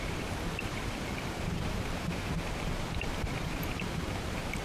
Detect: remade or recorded remade